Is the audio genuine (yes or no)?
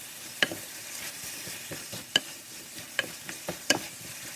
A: no